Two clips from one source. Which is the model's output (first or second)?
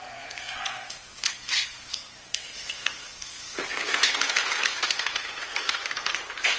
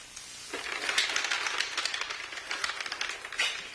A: first